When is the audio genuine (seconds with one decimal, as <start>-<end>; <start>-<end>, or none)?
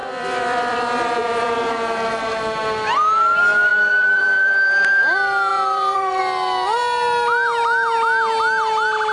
1.7-3.7; 5.0-5.5; 6.2-9.1